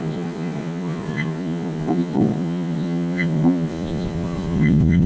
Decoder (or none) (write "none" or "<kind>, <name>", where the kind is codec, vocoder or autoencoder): vocoder, Vocos